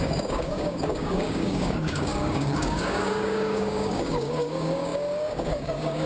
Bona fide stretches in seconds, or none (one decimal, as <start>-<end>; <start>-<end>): none